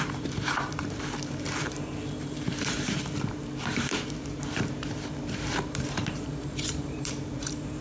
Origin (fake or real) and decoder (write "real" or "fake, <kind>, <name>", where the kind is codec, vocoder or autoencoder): fake, vocoder, BigVGAN v2